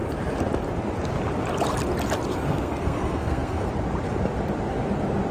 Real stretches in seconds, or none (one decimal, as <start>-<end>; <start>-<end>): 0.0-2.3; 3.7-5.3